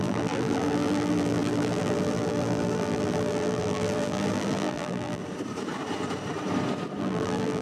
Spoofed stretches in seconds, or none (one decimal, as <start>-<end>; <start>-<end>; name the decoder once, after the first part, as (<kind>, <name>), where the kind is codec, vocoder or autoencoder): 0.0-5.2 (vocoder, BigVGAN v2); 7.0-7.6